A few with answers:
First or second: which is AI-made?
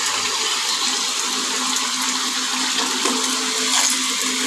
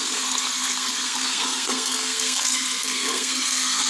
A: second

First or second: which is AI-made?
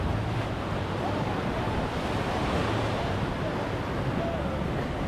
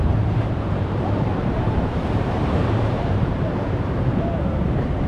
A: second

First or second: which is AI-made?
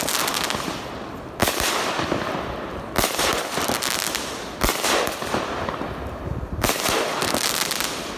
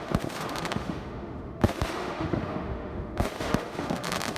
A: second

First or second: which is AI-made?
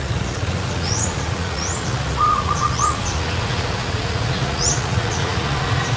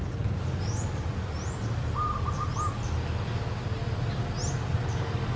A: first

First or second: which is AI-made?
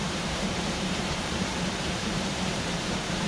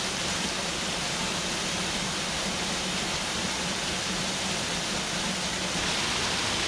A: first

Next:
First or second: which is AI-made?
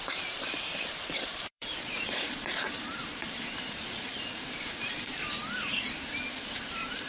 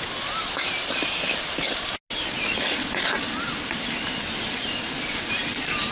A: first